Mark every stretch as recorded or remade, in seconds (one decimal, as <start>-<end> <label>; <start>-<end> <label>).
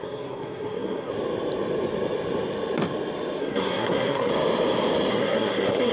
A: 0.0-1.1 remade; 1.1-3.4 recorded; 3.4-4.3 remade; 4.3-5.1 recorded; 5.1-5.9 remade